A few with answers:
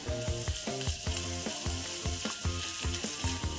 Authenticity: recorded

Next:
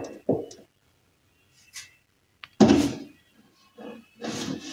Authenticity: recorded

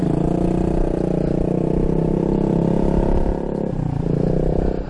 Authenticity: recorded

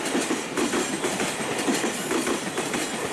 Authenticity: remade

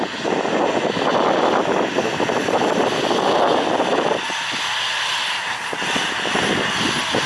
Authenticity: recorded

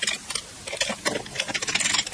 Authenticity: recorded